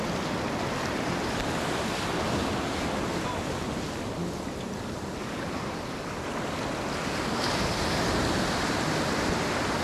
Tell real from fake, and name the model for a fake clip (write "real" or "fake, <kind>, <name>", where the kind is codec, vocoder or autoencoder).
real